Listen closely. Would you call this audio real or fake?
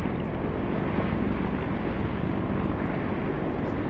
real